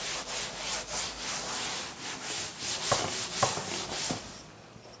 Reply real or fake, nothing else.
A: real